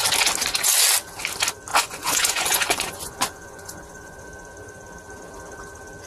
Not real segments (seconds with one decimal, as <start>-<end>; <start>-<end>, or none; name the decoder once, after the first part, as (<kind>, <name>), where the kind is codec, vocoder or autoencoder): 1.7-4.2 (vocoder, Vocos)